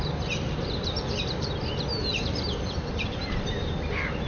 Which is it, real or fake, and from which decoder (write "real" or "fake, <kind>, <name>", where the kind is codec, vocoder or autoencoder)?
real